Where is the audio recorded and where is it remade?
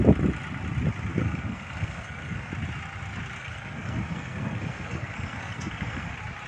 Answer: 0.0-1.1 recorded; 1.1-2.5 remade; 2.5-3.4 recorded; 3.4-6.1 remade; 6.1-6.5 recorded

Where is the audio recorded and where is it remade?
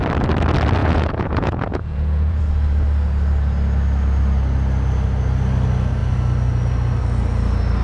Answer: 0.0-0.8 recorded; 0.8-2.4 remade; 2.4-7.8 recorded